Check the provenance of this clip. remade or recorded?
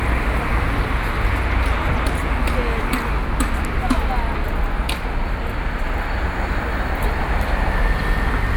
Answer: recorded